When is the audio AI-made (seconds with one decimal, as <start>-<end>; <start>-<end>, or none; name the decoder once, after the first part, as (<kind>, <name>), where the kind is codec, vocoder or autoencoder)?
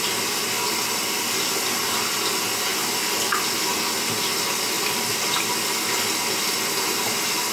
none